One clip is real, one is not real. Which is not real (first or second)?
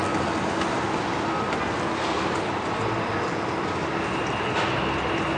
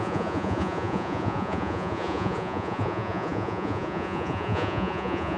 second